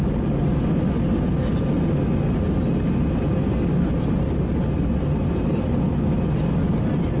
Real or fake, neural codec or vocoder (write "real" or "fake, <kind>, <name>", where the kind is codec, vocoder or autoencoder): real